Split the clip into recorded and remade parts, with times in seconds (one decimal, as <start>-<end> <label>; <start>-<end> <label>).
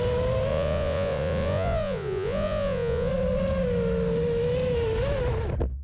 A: 0.0-0.5 recorded; 0.5-3.1 remade; 3.1-5.8 recorded